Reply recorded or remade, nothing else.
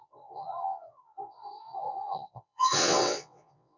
remade